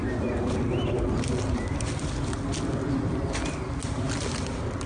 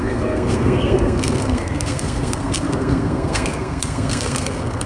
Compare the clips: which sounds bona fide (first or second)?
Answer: first